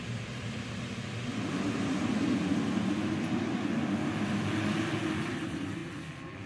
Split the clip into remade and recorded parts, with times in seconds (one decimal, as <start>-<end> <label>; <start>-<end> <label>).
0.0-1.3 remade; 1.3-5.2 recorded; 5.2-6.5 remade